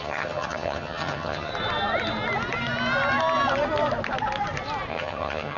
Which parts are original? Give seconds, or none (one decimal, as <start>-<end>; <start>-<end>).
1.5-4.9